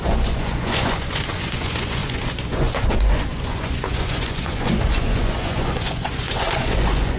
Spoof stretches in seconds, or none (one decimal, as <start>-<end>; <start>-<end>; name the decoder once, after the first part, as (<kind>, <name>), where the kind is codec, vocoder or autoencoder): 0.0-7.2 (vocoder, Vocos)